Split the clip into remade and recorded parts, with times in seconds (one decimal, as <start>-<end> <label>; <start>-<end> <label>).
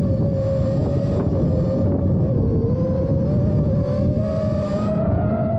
0.0-4.7 recorded; 4.7-5.6 remade